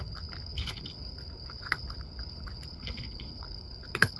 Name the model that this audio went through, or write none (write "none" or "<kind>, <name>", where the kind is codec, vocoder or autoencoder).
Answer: codec, HILCodec